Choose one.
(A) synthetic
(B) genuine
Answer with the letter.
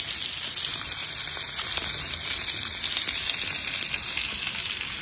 B